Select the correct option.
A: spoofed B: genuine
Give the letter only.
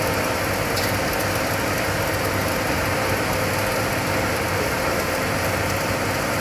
B